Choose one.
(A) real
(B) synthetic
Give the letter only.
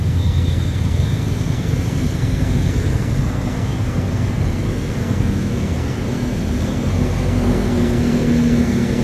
B